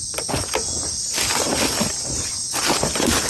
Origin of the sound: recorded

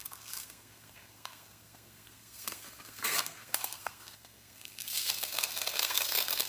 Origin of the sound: remade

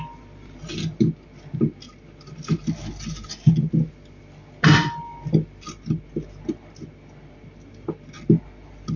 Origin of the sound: recorded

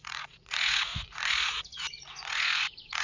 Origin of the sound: remade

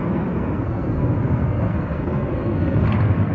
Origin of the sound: remade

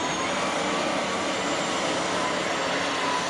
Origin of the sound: recorded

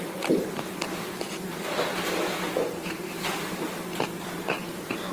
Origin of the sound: recorded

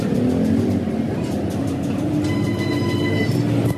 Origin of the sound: recorded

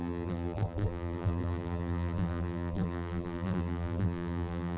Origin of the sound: remade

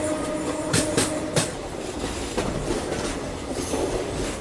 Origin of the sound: remade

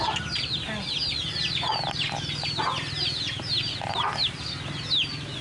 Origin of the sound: recorded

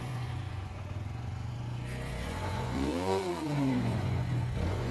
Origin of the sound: remade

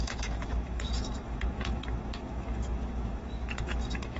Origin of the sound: remade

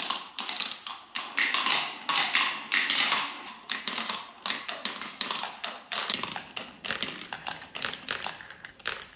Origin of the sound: recorded